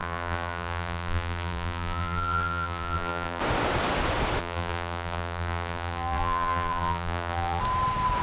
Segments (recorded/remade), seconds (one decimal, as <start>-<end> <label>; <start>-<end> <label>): 0.0-3.4 remade; 3.4-4.4 recorded; 4.4-7.6 remade; 7.6-8.2 recorded